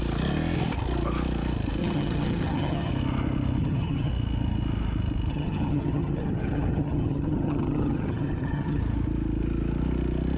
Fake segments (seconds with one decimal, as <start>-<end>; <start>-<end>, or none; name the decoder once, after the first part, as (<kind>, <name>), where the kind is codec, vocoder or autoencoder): 1.8-2.9 (vocoder, HiFi-GAN); 3.6-4.1; 5.3-8.8